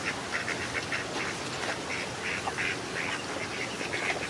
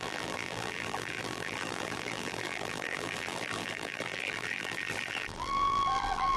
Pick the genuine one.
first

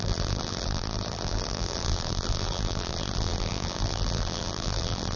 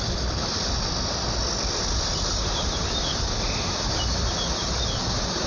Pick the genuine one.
second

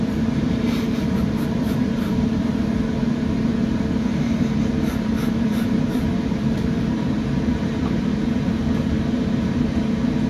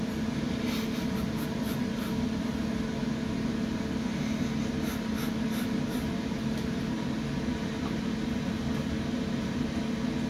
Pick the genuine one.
second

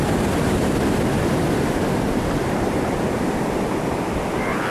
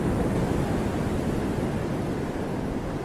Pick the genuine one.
second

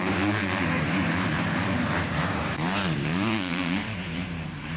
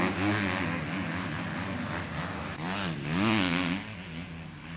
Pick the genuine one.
second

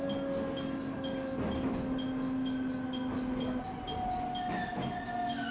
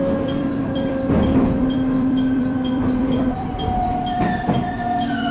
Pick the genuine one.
first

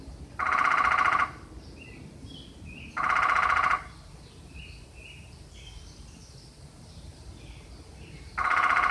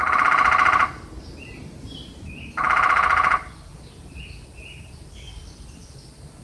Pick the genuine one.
second